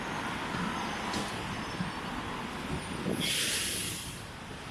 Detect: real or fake real